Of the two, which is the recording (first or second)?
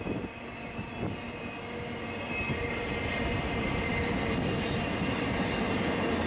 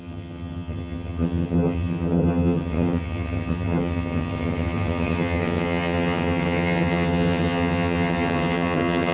first